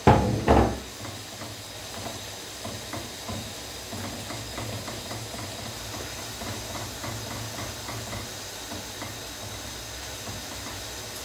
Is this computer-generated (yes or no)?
no